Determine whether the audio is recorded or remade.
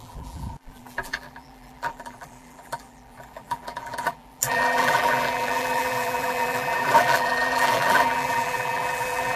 remade